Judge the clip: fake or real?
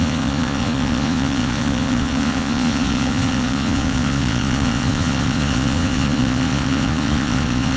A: fake